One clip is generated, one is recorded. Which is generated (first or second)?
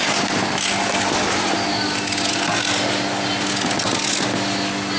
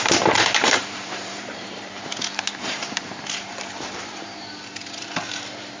second